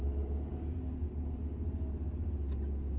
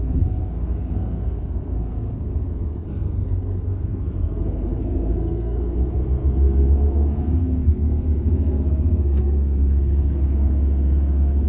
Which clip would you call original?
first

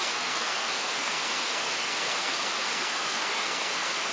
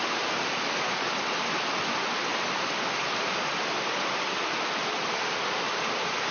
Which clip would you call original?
second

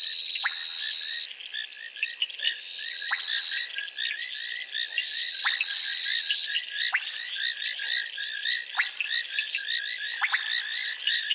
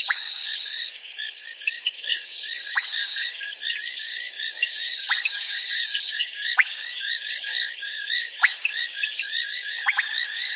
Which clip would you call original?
first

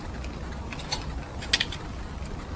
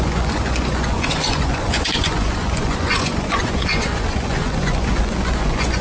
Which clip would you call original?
first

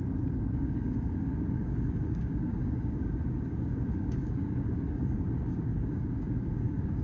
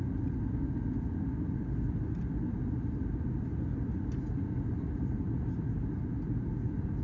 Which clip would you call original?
second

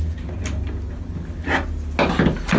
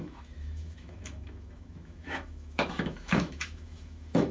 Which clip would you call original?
first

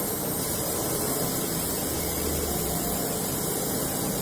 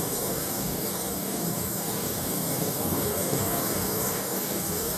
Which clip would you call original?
first